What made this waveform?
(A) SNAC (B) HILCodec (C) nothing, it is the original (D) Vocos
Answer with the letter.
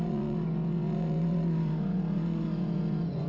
D